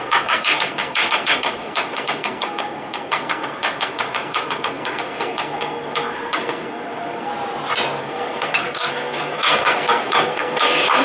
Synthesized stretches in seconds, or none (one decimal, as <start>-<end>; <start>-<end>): 0.0-7.3; 8.0-11.0